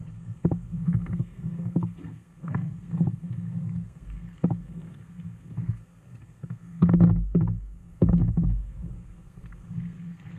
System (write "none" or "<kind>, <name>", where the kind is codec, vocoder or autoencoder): codec, SNAC